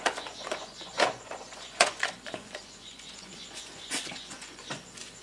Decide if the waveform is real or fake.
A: fake